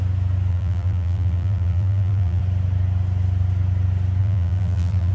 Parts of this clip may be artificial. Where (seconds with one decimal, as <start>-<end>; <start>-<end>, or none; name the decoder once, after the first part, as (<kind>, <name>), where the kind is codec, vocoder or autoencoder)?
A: 0.5-2.4 (vocoder, BigVGAN v2); 4.2-5.1